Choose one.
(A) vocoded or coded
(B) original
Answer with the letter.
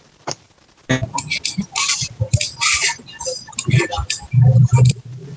B